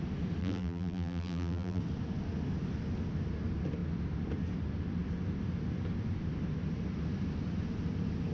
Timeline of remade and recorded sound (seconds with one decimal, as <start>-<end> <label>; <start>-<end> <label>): 0.0-0.4 recorded; 0.4-1.8 remade; 1.8-8.3 recorded